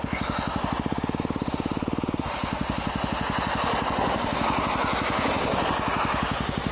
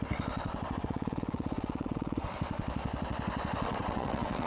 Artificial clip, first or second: second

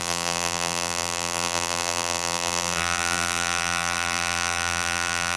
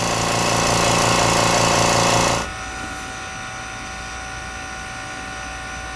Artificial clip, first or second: first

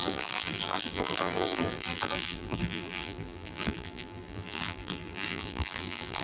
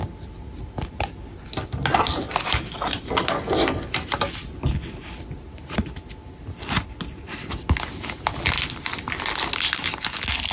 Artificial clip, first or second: first